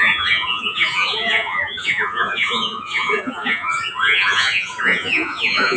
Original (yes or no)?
no